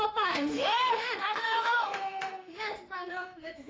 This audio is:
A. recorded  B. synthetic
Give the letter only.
B